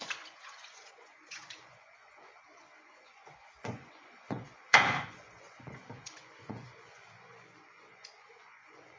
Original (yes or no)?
no